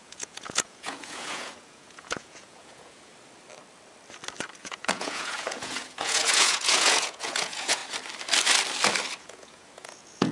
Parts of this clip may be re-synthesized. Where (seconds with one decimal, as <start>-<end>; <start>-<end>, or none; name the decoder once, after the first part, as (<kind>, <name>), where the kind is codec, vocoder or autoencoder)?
0.0-3.1 (vocoder, Vocos); 4.6-7.8; 9.2-10.3